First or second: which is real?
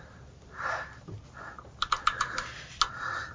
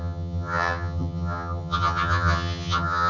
first